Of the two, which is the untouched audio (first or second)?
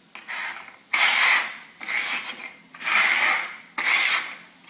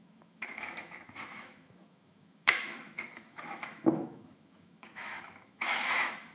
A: first